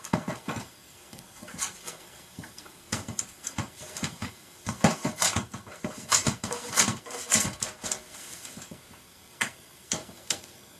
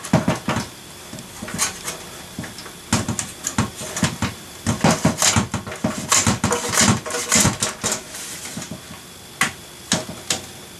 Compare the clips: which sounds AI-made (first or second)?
first